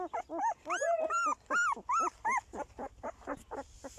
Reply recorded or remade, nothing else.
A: recorded